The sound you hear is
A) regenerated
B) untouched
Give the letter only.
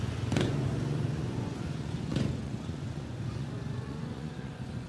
A